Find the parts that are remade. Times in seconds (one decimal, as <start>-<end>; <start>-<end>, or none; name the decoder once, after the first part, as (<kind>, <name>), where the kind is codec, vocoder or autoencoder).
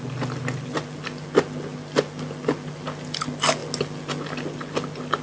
none